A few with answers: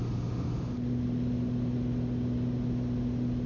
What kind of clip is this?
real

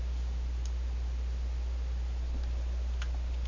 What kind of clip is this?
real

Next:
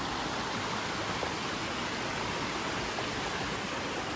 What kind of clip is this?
real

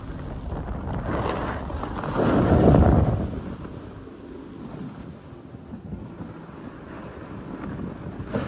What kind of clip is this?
real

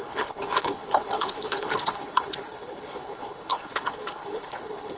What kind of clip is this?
fake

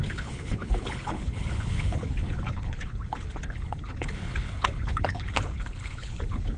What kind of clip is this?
fake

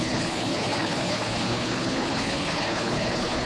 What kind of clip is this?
fake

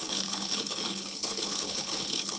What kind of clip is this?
fake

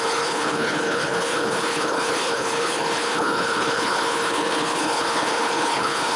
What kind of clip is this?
fake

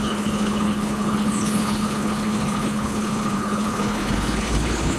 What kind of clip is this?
fake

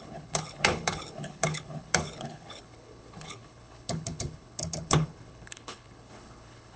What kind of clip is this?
fake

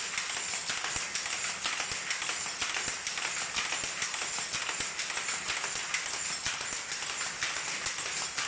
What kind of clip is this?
real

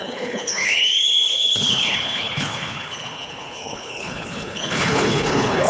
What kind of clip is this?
fake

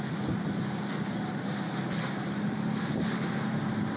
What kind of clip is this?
real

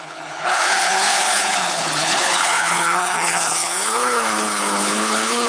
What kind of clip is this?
fake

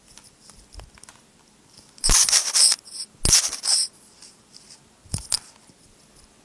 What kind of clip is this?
real